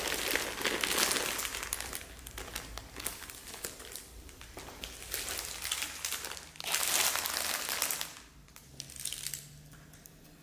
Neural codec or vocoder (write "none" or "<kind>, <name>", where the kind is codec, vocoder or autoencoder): none